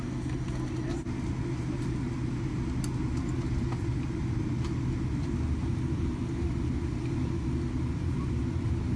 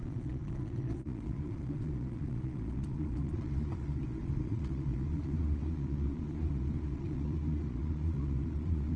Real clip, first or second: first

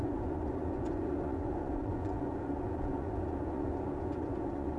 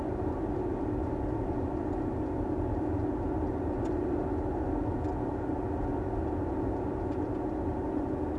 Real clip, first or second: second